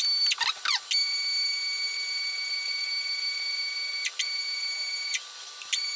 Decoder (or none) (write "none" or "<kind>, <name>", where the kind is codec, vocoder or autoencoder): none